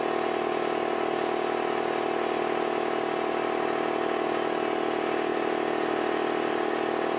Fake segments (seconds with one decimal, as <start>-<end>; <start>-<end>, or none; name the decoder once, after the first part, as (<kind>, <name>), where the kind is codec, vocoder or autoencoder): 5.3-6.6 (vocoder, BigVGAN v2)